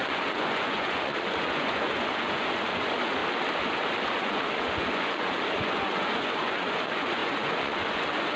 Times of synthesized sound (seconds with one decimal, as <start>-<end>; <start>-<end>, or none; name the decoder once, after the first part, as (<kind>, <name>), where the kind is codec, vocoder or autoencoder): 0.0-3.2 (vocoder, Vocos); 4.1-8.4